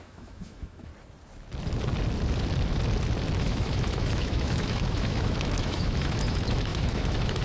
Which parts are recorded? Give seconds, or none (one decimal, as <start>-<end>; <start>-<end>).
0.9-3.4